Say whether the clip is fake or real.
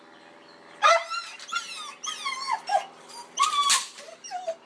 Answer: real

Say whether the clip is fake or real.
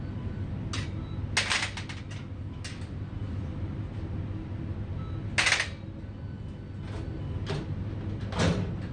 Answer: real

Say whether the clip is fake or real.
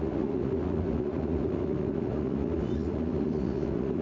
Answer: fake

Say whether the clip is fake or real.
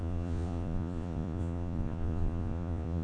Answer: fake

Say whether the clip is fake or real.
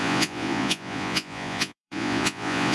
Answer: fake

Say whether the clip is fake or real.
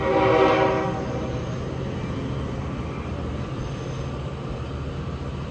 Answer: real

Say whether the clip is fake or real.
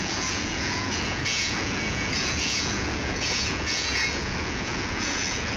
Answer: fake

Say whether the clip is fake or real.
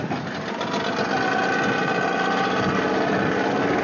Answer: real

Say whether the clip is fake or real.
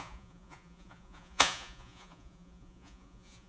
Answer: fake